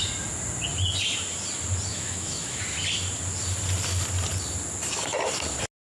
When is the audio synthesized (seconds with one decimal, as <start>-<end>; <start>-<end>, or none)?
1.9-2.6